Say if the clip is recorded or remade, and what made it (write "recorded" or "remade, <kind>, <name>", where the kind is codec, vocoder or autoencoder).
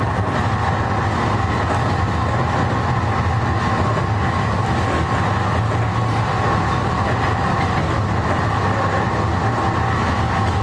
recorded